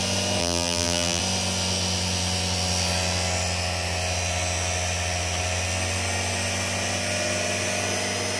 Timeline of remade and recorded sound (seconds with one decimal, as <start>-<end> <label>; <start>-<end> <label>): 0.0-0.4 recorded; 0.4-1.2 remade; 1.2-8.4 recorded

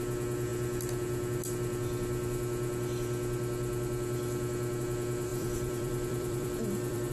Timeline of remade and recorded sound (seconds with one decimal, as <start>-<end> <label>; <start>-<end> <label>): 0.0-5.3 recorded; 5.3-7.1 remade

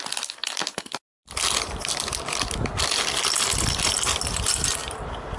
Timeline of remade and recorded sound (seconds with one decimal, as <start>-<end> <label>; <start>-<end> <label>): 0.0-5.4 recorded

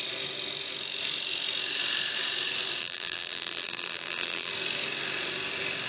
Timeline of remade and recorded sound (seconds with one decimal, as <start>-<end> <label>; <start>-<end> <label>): 0.0-2.8 recorded; 2.8-4.5 remade; 4.5-5.9 recorded

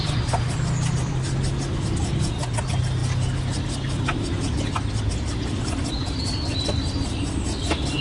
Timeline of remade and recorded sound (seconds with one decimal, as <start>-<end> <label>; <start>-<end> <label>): 0.0-8.0 recorded

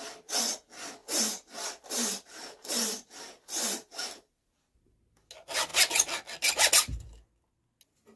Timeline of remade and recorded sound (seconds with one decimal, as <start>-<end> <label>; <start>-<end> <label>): 0.0-1.0 recorded; 1.0-5.1 remade; 5.1-8.2 recorded